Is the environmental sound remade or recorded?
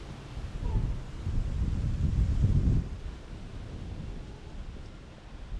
recorded